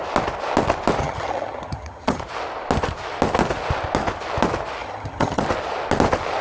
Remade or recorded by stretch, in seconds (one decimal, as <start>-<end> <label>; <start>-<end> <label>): 0.0-1.0 recorded; 1.0-2.2 remade; 2.2-4.8 recorded; 4.8-5.4 remade; 5.4-6.4 recorded